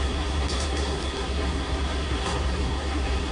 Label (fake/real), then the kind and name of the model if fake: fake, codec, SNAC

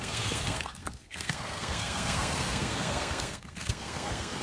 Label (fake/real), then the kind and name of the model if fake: fake, codec, SNAC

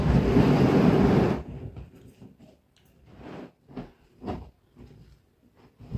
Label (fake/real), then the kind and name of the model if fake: real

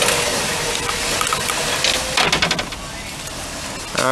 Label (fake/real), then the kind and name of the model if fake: real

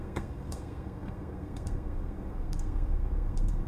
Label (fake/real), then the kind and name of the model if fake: fake, codec, SNAC